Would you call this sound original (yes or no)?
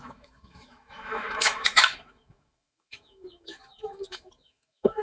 no